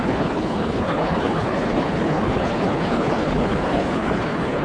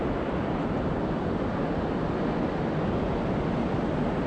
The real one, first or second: second